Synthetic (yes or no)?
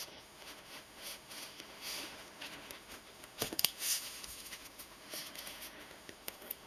yes